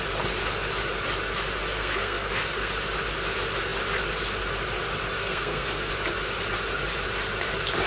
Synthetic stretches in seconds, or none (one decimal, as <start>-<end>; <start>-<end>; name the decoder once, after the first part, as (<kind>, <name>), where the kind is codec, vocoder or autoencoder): 1.7-2.7 (codec, SNAC); 5.2-5.9